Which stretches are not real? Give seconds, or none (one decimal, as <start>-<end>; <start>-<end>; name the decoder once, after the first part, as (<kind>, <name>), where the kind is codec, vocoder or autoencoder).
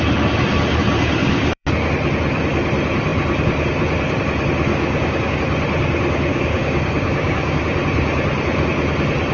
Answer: 1.2-1.7 (codec, DAC); 4.7-5.4; 6.3-7.6